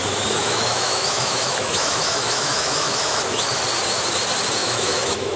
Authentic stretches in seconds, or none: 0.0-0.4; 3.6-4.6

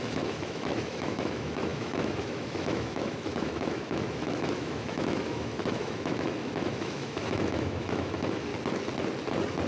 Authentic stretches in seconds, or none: 8.5-9.7

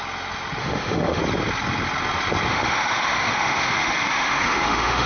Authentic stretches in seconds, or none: 0.0-0.6; 1.2-2.5

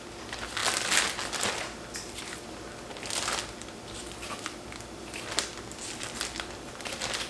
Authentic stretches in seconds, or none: 0.0-7.3

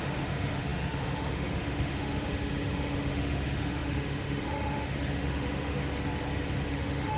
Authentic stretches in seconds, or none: 5.8-6.7

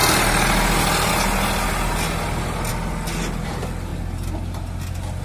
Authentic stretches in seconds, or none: 0.0-5.2

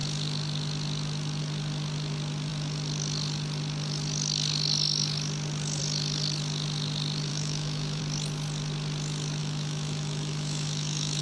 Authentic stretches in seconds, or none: 0.0-7.3; 8.0-9.4

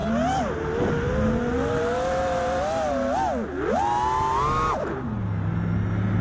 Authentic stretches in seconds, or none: 0.0-6.2